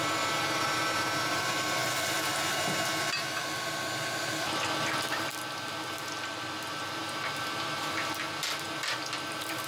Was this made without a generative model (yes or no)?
yes